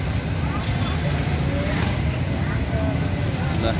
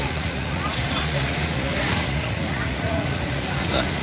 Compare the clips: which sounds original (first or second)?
first